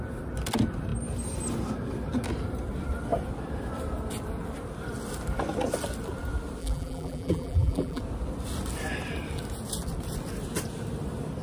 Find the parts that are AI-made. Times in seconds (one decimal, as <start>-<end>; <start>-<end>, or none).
6.6-8.0